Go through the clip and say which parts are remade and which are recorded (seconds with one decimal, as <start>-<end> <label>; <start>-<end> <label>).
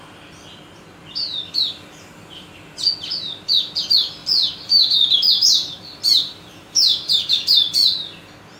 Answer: 0.0-4.2 recorded; 4.2-7.6 remade; 7.6-8.6 recorded